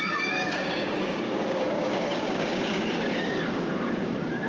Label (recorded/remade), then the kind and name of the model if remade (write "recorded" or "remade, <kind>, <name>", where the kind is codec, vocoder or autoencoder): remade, codec, DAC